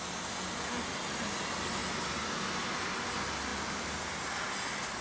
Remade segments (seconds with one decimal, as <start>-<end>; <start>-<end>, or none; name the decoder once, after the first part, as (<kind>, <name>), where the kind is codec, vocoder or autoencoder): none